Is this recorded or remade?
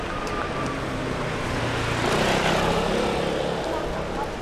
recorded